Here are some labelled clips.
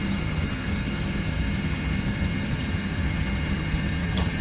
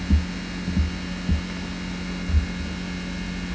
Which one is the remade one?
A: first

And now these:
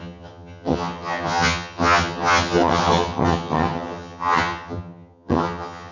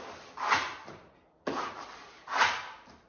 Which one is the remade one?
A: first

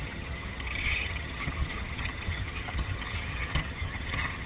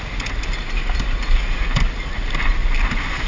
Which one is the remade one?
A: first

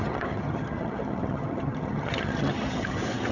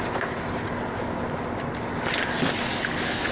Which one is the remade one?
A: first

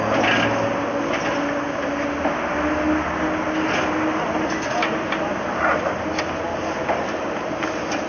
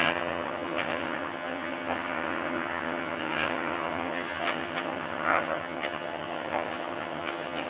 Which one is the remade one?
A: second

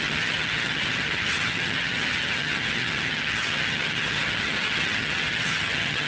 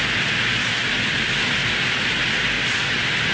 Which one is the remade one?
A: first